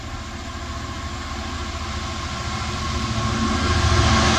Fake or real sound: real